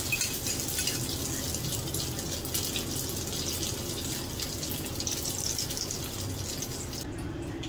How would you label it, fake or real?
real